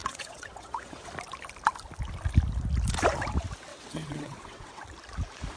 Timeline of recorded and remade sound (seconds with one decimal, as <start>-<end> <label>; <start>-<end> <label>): 0.0-1.1 remade; 1.1-3.7 recorded; 3.7-4.8 remade; 4.8-5.6 recorded